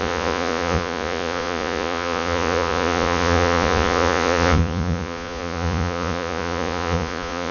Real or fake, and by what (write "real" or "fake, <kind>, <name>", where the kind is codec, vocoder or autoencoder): fake, vocoder, Vocos